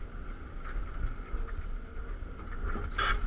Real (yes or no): yes